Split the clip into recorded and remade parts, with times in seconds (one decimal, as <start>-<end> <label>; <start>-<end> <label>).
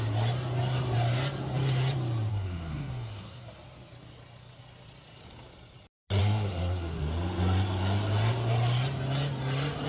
0.0-2.3 recorded; 2.3-3.5 remade; 3.5-6.2 recorded; 6.2-7.0 remade; 7.0-9.9 recorded